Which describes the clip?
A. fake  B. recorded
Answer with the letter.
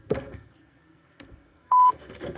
A